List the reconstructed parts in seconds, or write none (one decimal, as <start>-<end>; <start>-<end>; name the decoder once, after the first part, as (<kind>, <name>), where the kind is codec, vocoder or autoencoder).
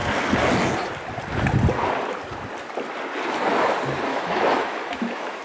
4.1-5.4 (autoencoder, DAC-VAE)